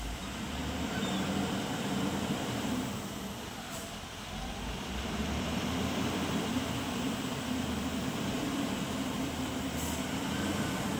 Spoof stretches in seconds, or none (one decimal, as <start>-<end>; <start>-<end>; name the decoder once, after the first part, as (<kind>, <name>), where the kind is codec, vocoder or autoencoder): 0.0-0.6 (vocoder, BigVGAN v2); 1.7-11.0